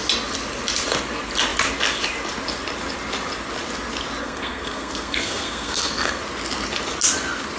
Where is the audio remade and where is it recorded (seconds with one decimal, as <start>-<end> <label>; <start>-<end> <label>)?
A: 0.0-4.2 recorded; 4.2-6.2 remade; 6.2-7.6 recorded